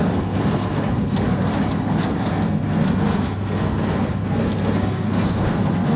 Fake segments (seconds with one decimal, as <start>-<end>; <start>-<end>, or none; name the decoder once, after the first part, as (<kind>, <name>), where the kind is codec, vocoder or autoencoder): 0.0-1.5 (codec, SNAC); 2.0-6.0